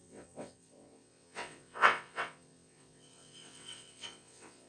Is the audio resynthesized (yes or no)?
yes